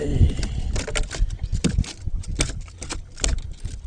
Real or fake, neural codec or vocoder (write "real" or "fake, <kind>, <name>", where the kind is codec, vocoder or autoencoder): real